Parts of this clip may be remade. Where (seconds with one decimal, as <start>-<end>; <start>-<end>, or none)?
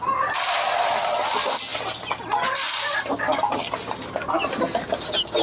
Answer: none